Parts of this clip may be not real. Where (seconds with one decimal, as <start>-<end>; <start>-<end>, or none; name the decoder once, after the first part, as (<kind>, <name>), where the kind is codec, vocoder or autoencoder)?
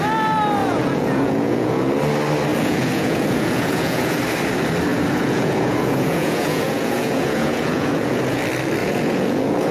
0.6-1.9 (vocoder, Vocos); 2.5-4.2; 4.9-8.4; 8.8-9.7